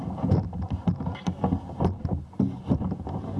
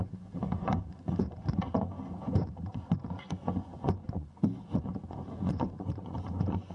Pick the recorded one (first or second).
first